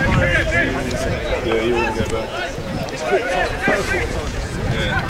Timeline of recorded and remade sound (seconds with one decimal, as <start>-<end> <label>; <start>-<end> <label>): 0.0-0.7 recorded; 0.7-2.8 remade; 2.8-3.2 recorded; 3.2-5.1 remade